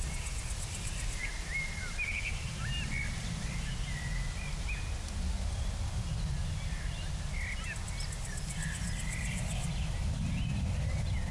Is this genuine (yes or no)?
yes